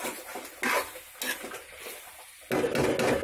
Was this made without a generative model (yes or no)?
yes